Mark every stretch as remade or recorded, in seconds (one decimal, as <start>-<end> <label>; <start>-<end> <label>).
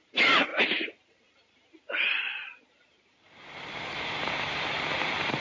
0.0-0.5 remade; 0.5-1.3 recorded; 1.3-5.4 remade